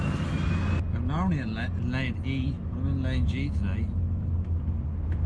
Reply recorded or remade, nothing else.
recorded